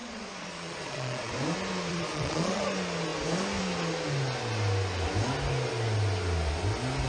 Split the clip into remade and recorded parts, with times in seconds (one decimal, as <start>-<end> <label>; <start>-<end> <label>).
0.0-1.3 remade; 1.3-1.9 recorded; 1.9-2.6 remade; 2.6-7.1 recorded